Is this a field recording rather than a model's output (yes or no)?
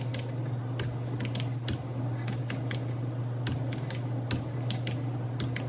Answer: yes